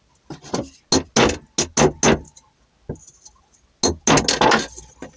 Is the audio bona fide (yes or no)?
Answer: yes